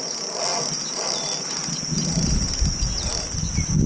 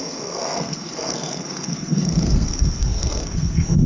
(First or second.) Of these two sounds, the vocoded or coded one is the second